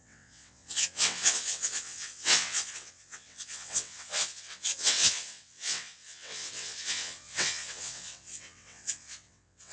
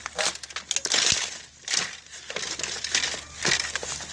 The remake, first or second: first